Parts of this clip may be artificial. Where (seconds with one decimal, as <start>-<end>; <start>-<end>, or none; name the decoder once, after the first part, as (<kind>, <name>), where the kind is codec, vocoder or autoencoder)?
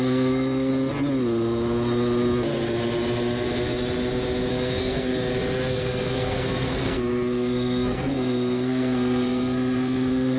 0.0-0.7 (codec, SNAC); 4.5-5.1; 5.7-10.4